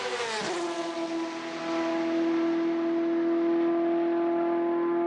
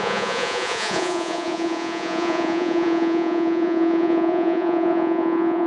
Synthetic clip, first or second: second